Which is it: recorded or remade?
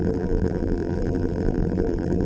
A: remade